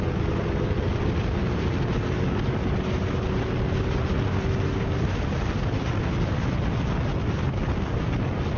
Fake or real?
real